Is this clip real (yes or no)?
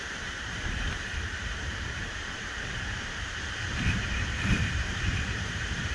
no